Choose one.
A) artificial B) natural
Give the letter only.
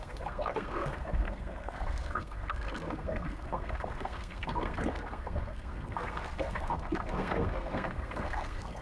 A